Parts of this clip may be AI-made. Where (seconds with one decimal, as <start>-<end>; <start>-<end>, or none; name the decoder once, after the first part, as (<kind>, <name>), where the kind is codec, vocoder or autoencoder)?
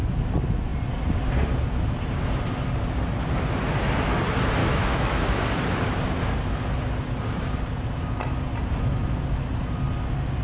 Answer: 4.6-5.2 (autoencoder, DAC-VAE)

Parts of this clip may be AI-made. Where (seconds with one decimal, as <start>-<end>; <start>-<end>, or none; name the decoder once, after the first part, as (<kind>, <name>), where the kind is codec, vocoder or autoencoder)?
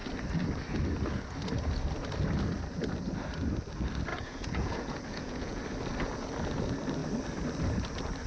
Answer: 4.1-5.6 (vocoder, Vocos)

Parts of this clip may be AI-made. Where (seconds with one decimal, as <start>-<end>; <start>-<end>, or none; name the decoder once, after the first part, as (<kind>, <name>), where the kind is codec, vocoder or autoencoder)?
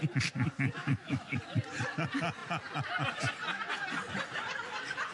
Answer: 0.8-1.4 (autoencoder, DAC-VAE)